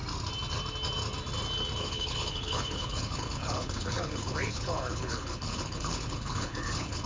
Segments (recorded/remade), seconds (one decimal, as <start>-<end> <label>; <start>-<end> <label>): 0.0-1.8 recorded; 1.8-7.1 remade